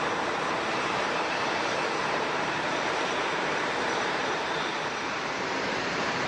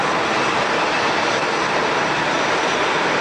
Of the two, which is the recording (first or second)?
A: second